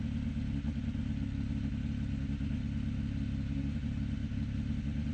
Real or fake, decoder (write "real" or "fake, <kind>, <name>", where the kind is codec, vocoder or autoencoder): real